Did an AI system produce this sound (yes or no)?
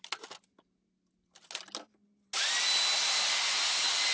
no